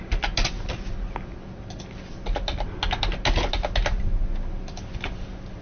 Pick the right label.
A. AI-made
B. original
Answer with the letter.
B